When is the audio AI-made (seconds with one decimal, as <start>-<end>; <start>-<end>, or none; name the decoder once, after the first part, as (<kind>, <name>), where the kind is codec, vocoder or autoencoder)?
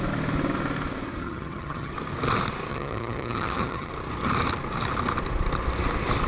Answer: 1.2-1.9 (vocoder, HiFi-GAN); 2.7-3.9